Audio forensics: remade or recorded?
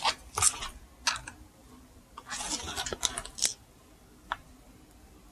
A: recorded